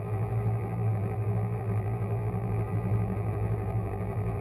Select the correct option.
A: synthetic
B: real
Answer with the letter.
A